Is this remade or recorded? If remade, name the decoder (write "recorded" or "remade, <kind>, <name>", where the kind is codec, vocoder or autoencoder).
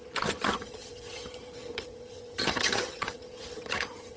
remade, vocoder, HiFi-GAN